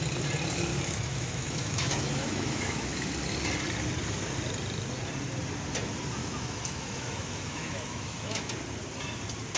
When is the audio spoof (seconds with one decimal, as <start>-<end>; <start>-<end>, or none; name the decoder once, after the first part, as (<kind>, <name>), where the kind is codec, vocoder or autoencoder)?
0.7-3.1 (autoencoder, DAC-VAE); 6.2-8.5